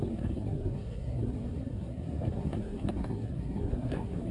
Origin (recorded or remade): remade